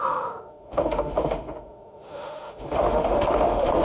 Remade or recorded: remade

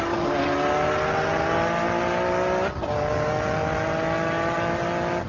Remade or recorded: recorded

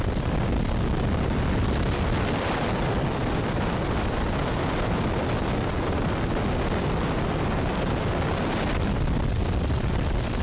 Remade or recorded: recorded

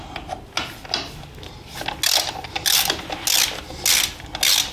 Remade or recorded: recorded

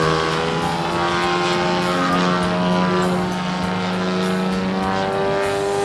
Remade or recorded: recorded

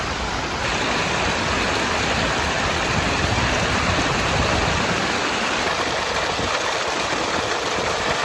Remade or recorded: recorded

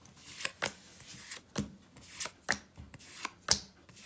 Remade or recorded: recorded